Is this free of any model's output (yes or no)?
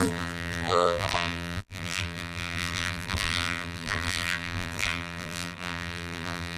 no